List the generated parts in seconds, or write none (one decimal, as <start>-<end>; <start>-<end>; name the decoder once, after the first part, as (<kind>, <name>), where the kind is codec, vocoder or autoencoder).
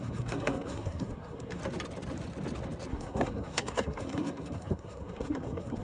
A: 0.0-1.6 (codec, SNAC); 2.9-5.8